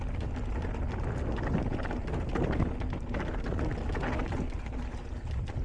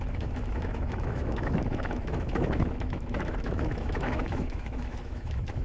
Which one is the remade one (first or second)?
second